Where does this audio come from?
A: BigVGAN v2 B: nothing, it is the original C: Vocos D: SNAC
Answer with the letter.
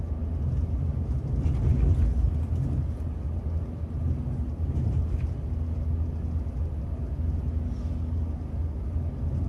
B